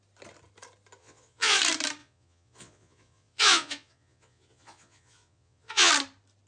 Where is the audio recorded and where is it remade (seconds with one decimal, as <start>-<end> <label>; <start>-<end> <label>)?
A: 0.0-1.0 recorded; 1.0-1.6 remade; 1.6-2.0 recorded; 2.0-5.9 remade; 5.9-6.5 recorded